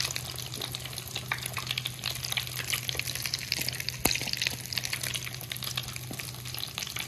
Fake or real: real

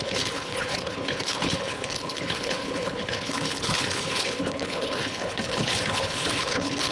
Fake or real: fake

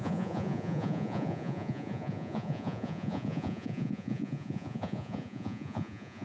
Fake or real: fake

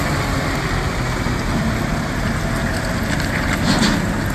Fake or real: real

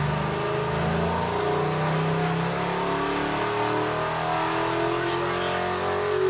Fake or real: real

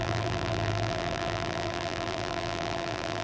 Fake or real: fake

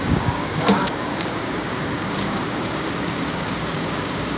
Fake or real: fake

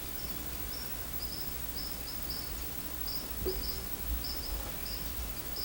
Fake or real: fake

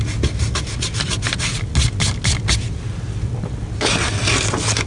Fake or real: real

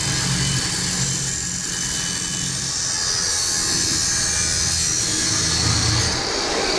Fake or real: real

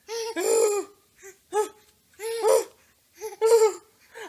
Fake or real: real